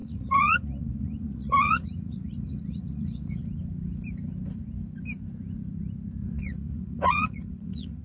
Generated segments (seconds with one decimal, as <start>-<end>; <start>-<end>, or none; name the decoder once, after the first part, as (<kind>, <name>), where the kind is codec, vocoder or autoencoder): 0.0-3.4 (vocoder, Vocos); 6.2-8.0